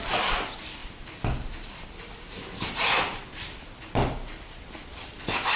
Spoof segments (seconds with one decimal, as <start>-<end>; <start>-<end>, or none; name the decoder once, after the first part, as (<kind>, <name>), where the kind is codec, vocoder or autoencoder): 0.0-3.2 (vocoder, BigVGAN v2); 4.6-5.6